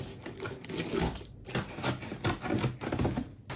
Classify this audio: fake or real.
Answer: real